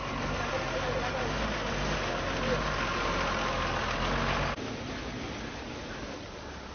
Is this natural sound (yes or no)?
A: yes